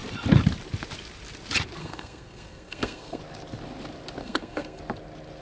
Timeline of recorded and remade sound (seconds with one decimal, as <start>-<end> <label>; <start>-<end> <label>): 0.0-1.8 recorded; 1.8-3.2 remade; 3.2-4.2 recorded; 4.2-4.8 remade; 4.8-5.4 recorded